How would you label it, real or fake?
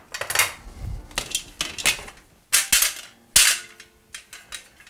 real